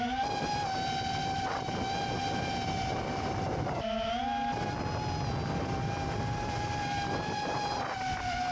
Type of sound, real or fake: real